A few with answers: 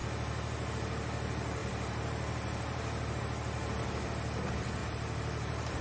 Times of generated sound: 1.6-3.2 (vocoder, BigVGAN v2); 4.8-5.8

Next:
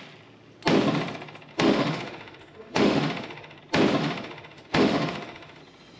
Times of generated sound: 1.5-3.6 (autoencoder, DAC-VAE); 4.0-5.6

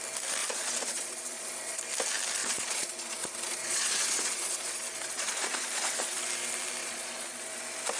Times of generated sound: 0.4-1.8 (vocoder, Vocos); 2.4-6.2; 6.8-7.6

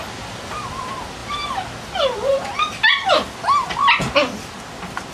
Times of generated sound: none

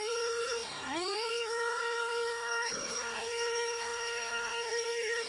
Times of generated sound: 0.0-5.3 (codec, SNAC)